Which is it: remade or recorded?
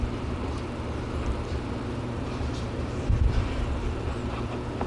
remade